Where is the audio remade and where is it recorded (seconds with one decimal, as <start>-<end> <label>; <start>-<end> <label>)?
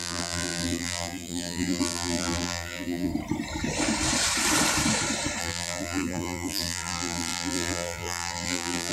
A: 0.0-3.1 remade; 3.1-5.4 recorded; 5.4-8.9 remade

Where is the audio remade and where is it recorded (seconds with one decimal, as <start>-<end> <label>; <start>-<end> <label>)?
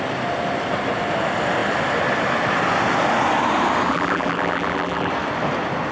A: 0.0-3.9 recorded; 3.9-5.1 remade; 5.1-5.9 recorded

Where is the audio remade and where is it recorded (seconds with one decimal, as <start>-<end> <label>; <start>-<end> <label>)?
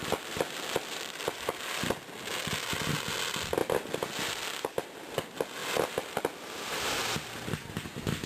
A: 0.0-1.7 remade; 1.7-8.3 recorded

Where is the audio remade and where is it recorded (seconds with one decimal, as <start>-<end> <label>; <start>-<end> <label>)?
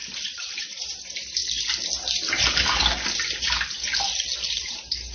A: 0.0-1.4 remade; 1.4-4.5 recorded; 4.5-5.1 remade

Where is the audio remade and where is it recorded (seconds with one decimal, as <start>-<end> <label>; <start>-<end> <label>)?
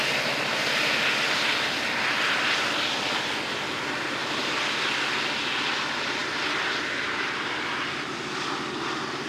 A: 0.0-4.2 recorded; 4.2-4.7 remade; 4.7-9.3 recorded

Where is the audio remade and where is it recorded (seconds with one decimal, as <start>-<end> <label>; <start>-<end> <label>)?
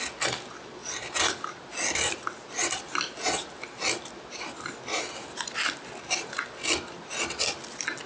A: 0.0-0.8 recorded; 0.8-4.1 remade; 4.1-8.1 recorded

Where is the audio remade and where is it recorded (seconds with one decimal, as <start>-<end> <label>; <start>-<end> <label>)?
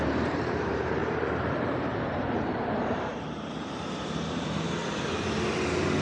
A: 0.0-4.8 remade; 4.8-5.5 recorded; 5.5-6.0 remade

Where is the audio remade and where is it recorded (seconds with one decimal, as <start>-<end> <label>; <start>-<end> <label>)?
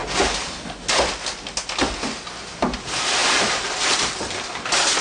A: 0.0-3.2 recorded; 3.2-4.3 remade; 4.3-5.0 recorded